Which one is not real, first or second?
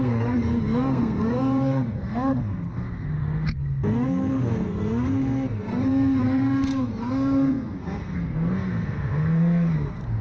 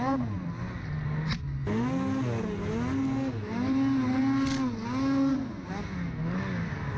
first